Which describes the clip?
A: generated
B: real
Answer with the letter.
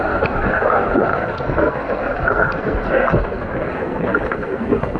A